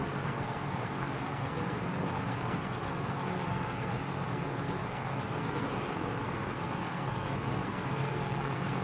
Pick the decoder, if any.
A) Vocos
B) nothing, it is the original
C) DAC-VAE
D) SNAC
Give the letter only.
D